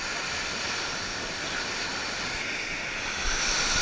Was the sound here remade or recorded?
recorded